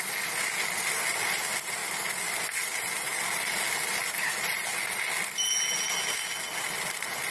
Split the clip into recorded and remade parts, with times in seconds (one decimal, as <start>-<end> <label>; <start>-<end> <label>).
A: 0.0-7.3 recorded

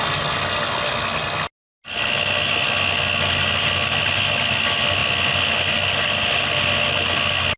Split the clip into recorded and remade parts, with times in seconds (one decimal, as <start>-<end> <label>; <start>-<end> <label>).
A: 0.0-7.6 recorded

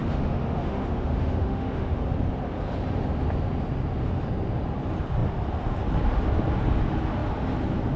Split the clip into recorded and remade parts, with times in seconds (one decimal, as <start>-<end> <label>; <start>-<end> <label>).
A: 0.0-2.0 remade; 2.0-8.0 recorded